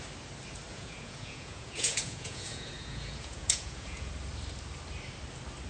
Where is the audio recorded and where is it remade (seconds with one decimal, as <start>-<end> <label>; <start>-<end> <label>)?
0.0-0.7 recorded; 0.7-4.1 remade; 4.1-5.7 recorded